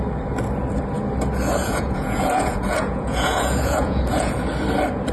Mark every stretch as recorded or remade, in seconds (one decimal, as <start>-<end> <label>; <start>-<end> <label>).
0.0-1.6 recorded; 1.6-4.5 remade; 4.5-5.1 recorded